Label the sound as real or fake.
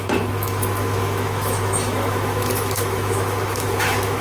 fake